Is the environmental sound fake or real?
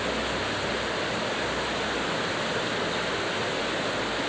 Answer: real